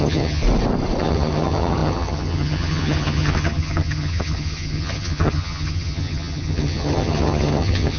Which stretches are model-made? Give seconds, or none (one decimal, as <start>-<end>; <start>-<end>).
0.0-0.4; 1.0-8.0